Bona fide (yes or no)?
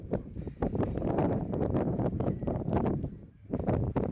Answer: no